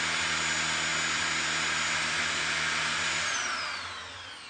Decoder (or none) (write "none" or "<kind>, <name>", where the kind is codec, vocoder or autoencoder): none